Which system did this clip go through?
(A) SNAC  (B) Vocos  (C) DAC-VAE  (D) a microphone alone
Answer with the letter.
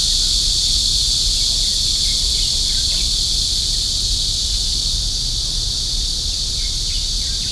D